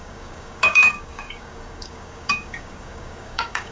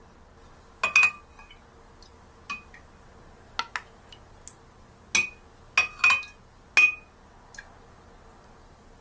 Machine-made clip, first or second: first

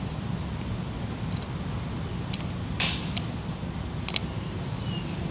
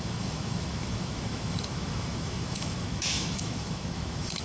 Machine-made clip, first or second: second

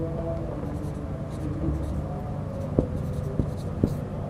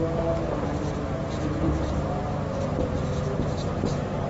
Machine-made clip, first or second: second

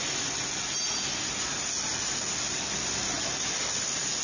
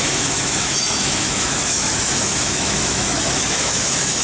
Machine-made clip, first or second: second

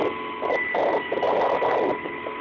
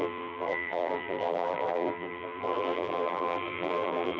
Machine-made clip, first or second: second